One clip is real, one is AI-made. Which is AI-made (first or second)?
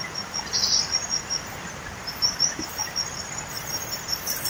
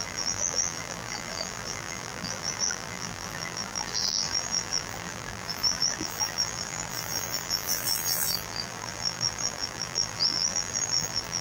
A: second